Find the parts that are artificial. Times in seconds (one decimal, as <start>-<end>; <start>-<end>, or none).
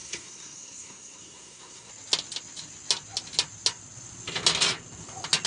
0.0-1.9